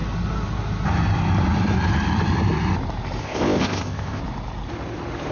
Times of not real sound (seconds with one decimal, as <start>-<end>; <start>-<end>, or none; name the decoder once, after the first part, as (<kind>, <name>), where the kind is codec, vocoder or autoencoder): 3.2-4.2 (codec, ZipCodec)

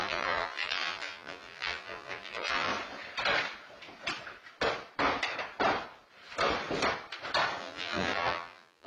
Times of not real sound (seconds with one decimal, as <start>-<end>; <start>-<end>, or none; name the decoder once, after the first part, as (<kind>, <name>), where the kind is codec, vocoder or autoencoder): 0.0-2.7 (vocoder, BigVGAN v2); 7.6-8.9

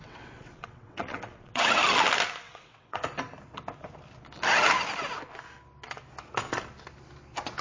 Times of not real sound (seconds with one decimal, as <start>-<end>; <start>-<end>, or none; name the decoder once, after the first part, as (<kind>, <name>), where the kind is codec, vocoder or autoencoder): 0.0-1.8 (vocoder, WaveNeXt); 2.4-3.0

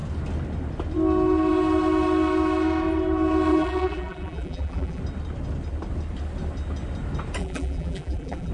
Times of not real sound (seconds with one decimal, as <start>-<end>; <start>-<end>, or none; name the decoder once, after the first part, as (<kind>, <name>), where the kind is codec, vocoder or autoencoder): 3.5-5.0 (vocoder, BigVGAN v2); 7.4-8.5

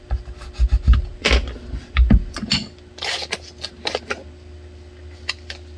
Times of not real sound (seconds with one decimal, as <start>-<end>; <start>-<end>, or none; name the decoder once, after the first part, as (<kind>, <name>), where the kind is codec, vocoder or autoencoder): none

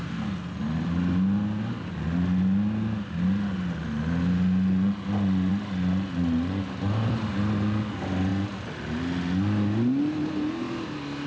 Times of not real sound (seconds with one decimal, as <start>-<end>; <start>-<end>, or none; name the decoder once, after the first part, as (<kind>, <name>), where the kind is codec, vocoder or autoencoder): none

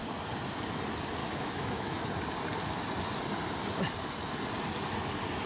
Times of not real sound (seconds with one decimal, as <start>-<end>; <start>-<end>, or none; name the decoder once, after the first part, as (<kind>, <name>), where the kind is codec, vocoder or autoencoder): 1.2-2.1 (autoencoder, DAC-VAE)

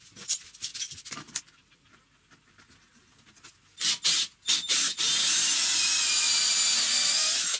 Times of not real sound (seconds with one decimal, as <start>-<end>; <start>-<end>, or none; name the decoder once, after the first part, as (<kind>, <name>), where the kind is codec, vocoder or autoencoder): none